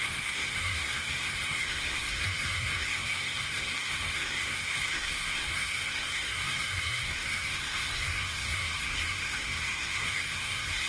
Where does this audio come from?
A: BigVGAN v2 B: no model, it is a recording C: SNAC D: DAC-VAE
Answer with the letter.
C